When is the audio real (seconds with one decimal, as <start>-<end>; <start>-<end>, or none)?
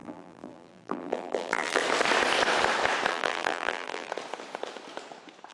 1.8-3.1; 4.1-5.5